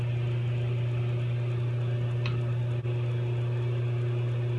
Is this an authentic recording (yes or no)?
yes